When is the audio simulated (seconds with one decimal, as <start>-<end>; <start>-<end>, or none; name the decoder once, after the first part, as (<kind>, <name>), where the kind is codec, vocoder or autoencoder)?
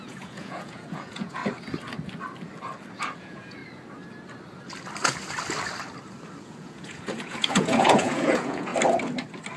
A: 0.0-1.4 (vocoder, Vocos); 3.2-3.6; 6.4-8.7